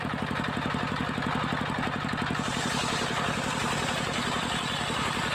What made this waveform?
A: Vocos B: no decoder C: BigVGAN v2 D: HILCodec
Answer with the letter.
C